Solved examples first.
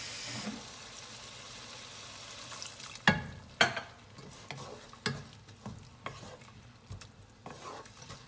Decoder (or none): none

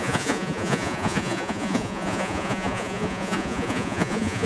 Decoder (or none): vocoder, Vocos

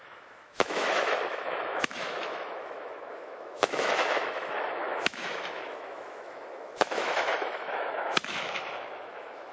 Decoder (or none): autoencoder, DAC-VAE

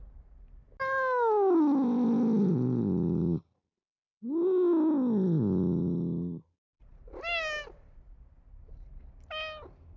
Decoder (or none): none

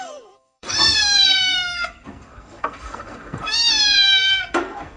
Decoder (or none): codec, SNAC